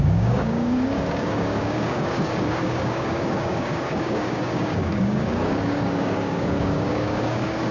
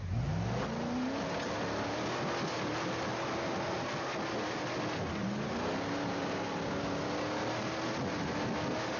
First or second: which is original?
second